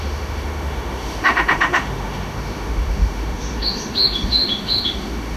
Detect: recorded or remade remade